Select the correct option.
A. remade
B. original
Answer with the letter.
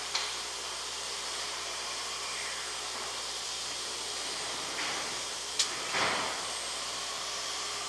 A